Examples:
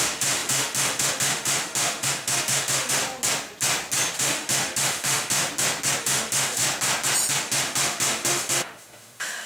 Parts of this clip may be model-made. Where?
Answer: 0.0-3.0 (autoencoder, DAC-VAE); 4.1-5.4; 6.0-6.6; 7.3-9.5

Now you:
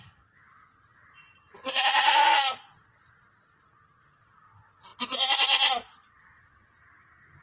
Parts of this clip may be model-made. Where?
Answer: none

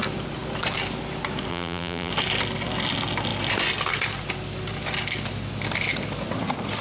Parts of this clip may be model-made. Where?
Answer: 1.5-2.1 (vocoder, BigVGAN v2)